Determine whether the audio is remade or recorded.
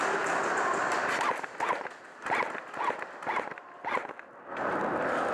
recorded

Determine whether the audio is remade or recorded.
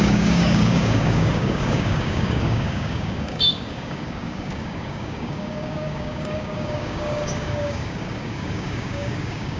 remade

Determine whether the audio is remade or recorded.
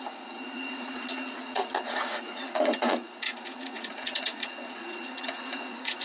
remade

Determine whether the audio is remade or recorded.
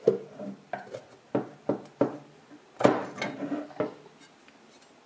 recorded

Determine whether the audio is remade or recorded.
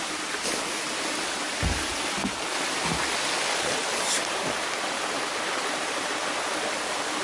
recorded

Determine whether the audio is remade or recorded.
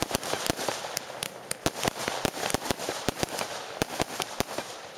remade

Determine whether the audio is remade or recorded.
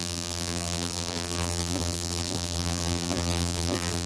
remade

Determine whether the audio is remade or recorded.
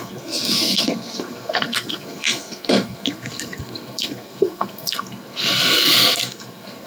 remade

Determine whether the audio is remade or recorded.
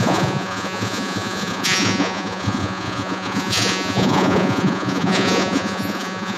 remade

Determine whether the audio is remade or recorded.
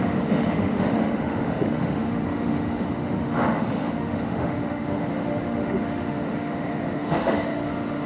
remade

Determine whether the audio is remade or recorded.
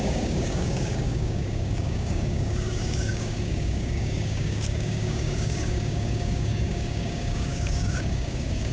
remade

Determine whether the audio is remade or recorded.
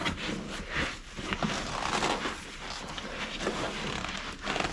recorded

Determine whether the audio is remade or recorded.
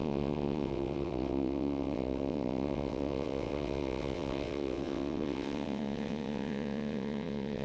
remade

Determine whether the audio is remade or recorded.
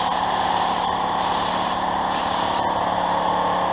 recorded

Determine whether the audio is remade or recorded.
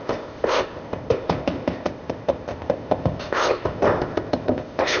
remade